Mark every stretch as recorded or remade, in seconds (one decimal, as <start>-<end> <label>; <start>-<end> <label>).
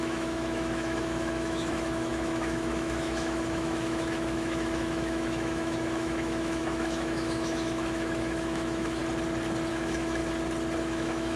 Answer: 0.0-9.0 remade; 9.0-9.7 recorded; 9.7-10.2 remade; 10.2-10.8 recorded; 10.8-11.4 remade